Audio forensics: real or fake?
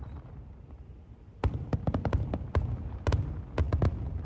real